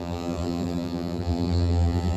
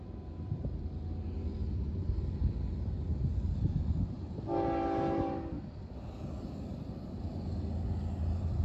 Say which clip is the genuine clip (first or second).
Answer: second